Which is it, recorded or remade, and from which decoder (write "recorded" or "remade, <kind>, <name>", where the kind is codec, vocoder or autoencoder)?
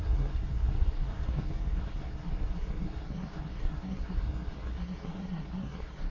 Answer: remade, codec, SNAC